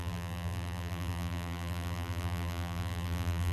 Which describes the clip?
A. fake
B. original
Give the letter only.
A